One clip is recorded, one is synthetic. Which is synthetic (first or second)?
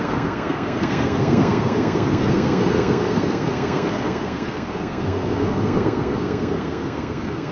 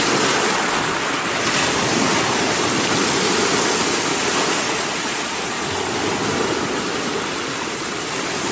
first